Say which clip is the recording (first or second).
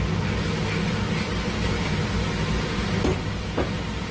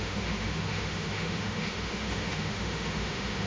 first